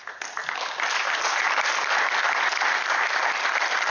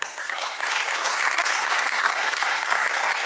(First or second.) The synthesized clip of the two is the second